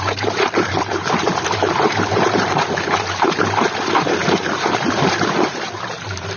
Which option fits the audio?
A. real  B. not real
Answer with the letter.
B